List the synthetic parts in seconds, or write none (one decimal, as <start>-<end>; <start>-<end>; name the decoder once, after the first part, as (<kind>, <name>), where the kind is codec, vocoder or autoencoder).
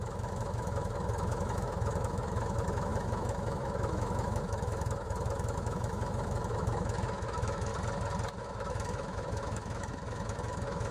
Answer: 0.0-7.7 (autoencoder, DAC-VAE); 8.4-10.9